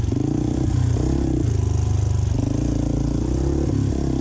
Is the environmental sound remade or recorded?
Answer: recorded